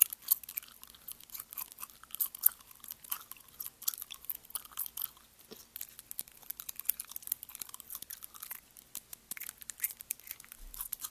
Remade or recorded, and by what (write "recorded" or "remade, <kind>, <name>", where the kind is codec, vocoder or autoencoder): recorded